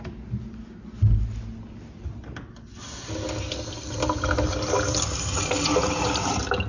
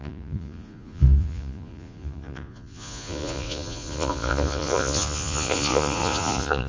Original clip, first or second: first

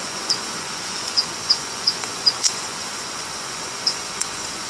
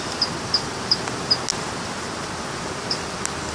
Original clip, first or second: second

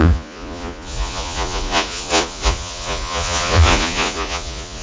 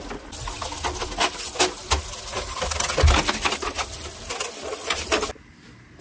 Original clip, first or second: second